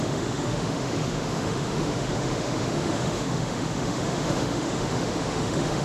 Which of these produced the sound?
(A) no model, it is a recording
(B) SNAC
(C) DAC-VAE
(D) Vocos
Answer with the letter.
C